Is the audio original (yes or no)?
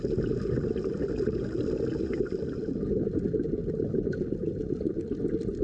yes